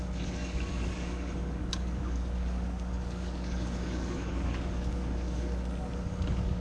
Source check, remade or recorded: remade